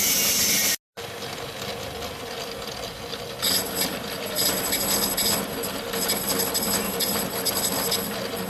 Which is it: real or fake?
real